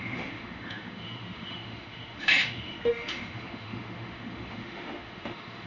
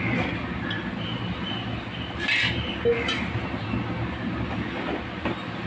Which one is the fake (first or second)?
first